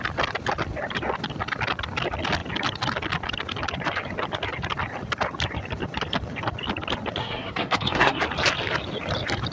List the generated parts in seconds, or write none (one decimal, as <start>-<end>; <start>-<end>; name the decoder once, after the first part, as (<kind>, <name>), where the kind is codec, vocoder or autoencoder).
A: 7.2-8.2 (codec, SNAC)